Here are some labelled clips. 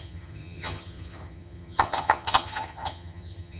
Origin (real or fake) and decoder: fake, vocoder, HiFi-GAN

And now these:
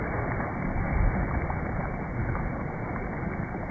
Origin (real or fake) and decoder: real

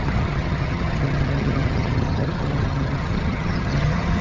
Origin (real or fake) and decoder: fake, vocoder, HiFi-GAN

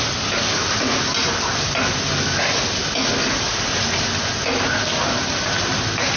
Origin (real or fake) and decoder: real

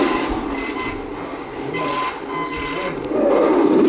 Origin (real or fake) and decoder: real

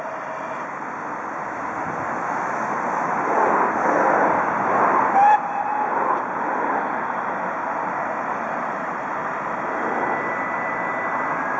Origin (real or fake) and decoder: real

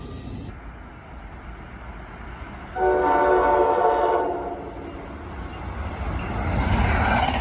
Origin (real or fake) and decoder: real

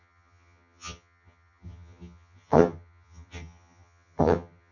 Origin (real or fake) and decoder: fake, vocoder, HiFi-GAN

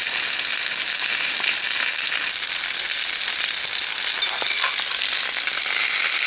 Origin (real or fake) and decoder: real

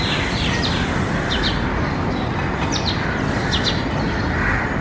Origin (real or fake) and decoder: real